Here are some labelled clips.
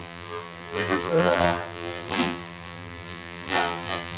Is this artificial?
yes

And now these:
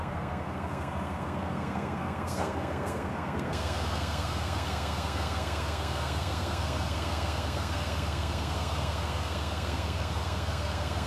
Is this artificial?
yes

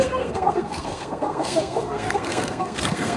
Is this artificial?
yes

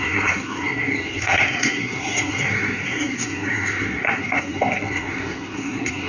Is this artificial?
yes